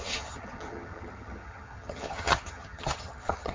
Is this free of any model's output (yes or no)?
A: no